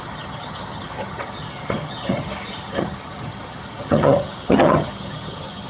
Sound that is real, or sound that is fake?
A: fake